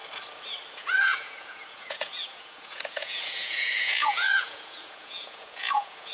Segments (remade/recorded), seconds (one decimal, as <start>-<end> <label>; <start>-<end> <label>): 0.0-0.7 recorded; 0.7-6.1 remade